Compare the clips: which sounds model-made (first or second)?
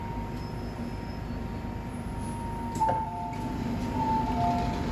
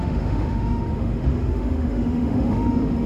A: second